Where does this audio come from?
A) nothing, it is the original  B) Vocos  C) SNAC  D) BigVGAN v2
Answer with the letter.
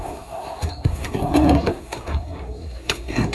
C